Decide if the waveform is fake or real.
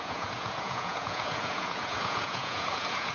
fake